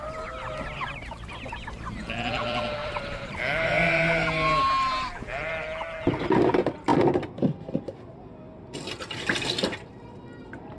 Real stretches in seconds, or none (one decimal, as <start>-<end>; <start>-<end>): 0.0-2.8; 5.5-10.8